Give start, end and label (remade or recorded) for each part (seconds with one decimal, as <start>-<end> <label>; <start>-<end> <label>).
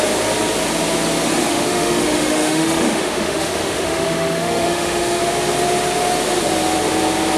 0.0-1.5 recorded; 1.5-5.2 remade; 5.2-7.4 recorded